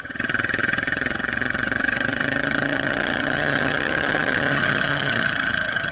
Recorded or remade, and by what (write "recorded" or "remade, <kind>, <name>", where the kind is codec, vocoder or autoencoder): remade, vocoder, HiFi-GAN